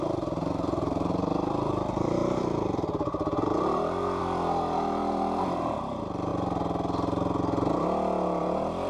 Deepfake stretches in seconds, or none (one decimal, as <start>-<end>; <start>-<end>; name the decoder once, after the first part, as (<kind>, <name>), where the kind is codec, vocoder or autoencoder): 0.0-6.3 (vocoder, BigVGAN v2); 8.4-8.9